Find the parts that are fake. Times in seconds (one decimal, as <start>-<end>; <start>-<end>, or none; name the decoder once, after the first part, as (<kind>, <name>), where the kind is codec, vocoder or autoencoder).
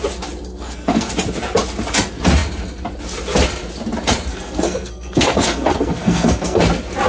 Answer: 0.5-1.1 (codec, SNAC); 4.3-6.6